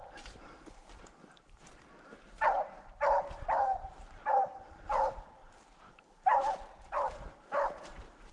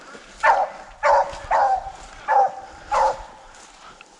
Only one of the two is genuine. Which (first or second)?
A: second